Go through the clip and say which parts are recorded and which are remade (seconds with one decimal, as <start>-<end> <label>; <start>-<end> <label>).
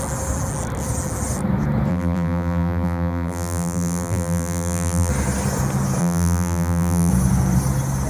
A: 0.0-1.9 recorded; 1.9-5.1 remade; 5.1-6.0 recorded; 6.0-7.1 remade; 7.1-8.1 recorded